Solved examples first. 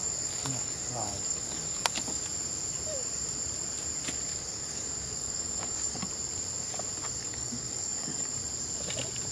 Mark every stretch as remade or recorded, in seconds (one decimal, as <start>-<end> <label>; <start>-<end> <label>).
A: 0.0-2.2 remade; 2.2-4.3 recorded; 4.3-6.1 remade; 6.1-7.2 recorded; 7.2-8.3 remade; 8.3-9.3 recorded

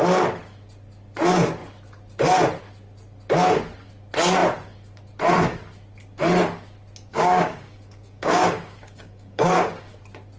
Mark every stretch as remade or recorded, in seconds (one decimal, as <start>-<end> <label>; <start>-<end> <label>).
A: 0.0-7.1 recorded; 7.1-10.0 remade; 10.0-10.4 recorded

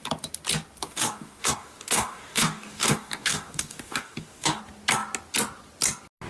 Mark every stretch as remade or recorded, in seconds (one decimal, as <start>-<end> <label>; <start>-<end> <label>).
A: 0.0-0.8 recorded; 0.8-4.6 remade; 4.6-6.3 recorded

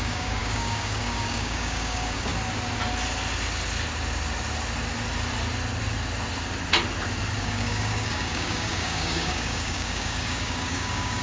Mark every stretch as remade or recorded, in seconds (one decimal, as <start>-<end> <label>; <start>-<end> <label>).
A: 0.0-2.3 remade; 2.3-7.4 recorded; 7.4-11.2 remade

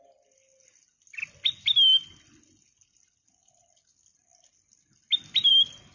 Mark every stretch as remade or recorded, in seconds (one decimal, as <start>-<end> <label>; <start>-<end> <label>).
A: 0.0-5.9 recorded

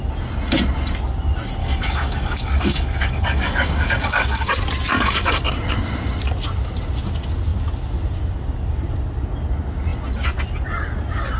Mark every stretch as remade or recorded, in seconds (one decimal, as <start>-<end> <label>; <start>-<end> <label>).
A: 0.0-1.6 recorded; 1.6-4.5 remade; 4.5-4.9 recorded; 4.9-5.5 remade; 5.5-11.4 recorded